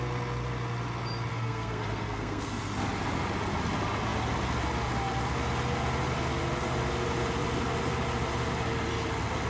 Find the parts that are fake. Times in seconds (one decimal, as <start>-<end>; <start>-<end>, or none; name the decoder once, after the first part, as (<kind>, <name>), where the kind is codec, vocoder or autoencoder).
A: 1.3-2.6 (codec, SNAC)